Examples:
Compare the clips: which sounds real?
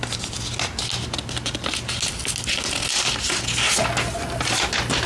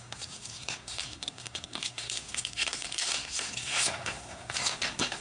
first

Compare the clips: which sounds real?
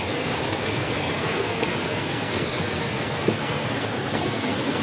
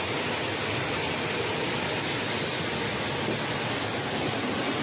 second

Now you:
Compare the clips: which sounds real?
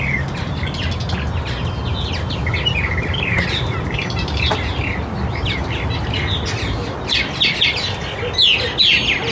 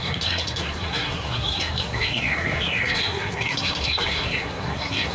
first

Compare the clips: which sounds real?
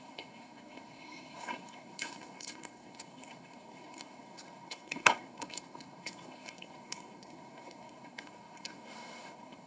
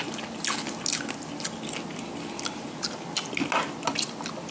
second